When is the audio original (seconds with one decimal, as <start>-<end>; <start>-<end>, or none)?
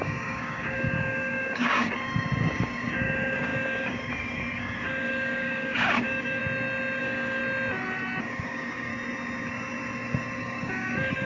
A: 6.4-7.0; 7.4-8.2; 8.9-10.4